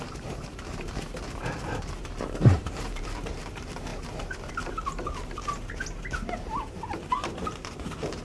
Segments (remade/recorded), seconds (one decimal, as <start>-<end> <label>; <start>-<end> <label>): 0.0-8.2 remade